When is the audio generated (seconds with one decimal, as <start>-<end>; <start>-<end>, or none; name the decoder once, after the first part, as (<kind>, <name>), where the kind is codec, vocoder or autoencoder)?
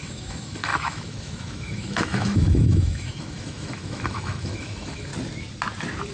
0.0-5.1 (autoencoder, DAC-VAE)